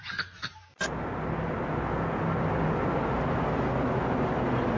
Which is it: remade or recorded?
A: recorded